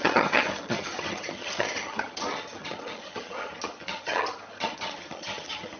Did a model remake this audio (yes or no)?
yes